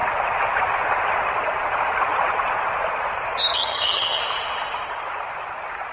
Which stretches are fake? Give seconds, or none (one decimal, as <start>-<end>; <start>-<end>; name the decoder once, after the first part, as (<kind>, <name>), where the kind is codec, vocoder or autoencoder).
3.5-4.2 (vocoder, HiFi-GAN)